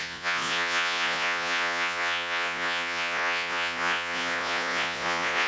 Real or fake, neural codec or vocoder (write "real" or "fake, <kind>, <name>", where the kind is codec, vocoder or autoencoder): fake, vocoder, Vocos